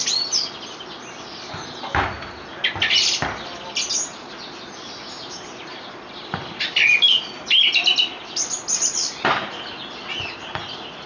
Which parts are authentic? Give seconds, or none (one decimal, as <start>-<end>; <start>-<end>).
0.0-11.1